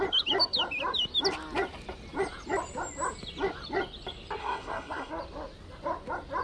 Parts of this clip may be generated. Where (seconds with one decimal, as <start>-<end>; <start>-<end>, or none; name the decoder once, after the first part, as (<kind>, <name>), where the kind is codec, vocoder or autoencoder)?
4.4-5.1 (codec, SNAC)